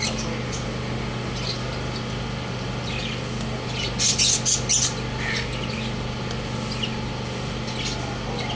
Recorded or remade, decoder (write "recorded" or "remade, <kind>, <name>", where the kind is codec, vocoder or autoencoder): recorded